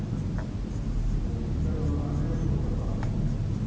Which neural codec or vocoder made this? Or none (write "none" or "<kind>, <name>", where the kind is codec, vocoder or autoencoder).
none